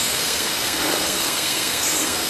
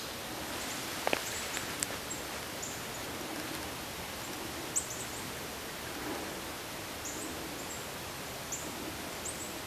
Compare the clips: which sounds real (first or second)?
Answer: second